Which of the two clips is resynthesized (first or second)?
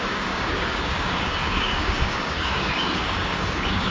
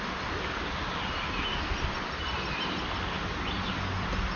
first